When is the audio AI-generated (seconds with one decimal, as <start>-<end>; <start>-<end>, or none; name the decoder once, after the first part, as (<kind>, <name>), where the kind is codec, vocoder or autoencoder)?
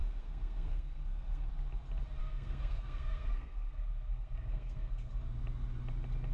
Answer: 0.0-1.5 (codec, SNAC); 2.2-5.2